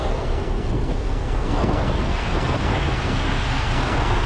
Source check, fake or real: fake